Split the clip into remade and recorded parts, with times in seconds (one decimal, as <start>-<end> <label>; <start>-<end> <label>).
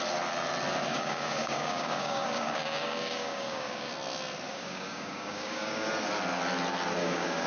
0.0-0.9 recorded; 0.9-3.9 remade; 3.9-4.5 recorded; 4.5-5.9 remade; 5.9-7.0 recorded; 7.0-7.5 remade